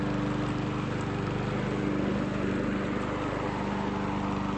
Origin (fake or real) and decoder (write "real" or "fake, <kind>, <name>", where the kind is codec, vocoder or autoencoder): real